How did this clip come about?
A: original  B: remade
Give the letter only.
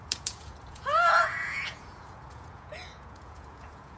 B